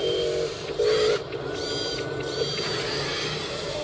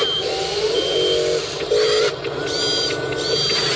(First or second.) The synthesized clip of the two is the first